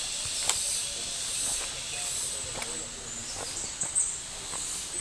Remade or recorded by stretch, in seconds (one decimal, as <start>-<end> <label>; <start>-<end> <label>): 0.0-5.0 recorded